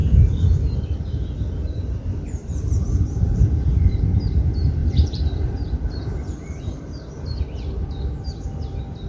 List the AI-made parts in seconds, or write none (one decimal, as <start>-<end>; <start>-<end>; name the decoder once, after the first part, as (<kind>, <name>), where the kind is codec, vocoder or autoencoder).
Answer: 2.4-4.0 (vocoder, BigVGAN v2); 4.8-7.4